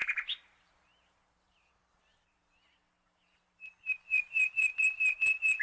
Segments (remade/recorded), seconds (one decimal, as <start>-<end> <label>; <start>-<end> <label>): 0.0-1.7 remade; 1.7-2.1 recorded; 2.1-5.6 remade